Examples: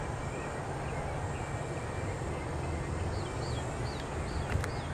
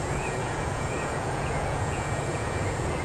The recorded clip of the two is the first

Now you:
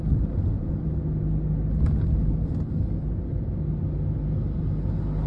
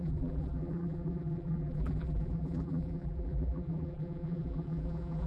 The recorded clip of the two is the first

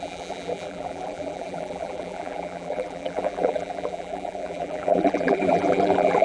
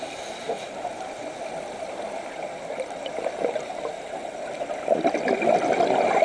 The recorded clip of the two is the second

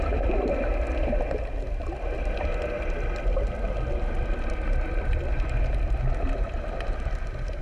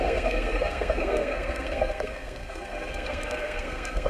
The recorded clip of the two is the first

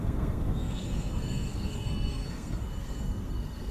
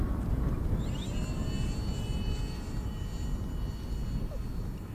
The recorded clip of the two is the second